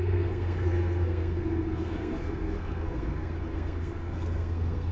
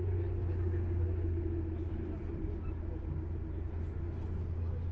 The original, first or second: second